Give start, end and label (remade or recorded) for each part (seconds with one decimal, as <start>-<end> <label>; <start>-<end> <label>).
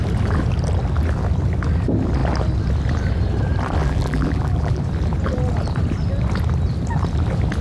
0.0-3.8 recorded; 3.8-4.8 remade; 4.8-7.6 recorded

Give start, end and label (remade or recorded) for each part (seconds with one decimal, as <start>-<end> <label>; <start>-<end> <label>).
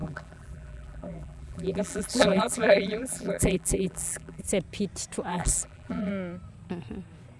0.0-4.4 remade; 4.4-5.3 recorded; 5.3-6.1 remade; 6.1-7.4 recorded